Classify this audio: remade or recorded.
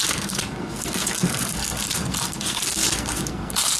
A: remade